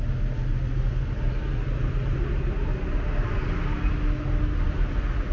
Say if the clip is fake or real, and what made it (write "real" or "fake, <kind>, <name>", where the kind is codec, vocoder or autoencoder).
real